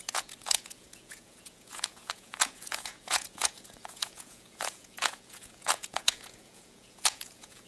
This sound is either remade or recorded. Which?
remade